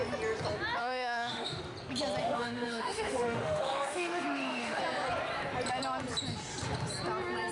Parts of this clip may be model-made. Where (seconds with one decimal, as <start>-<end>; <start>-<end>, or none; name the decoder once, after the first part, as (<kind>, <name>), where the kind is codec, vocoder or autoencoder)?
0.8-1.6 (autoencoder, DAC-VAE); 2.2-4.8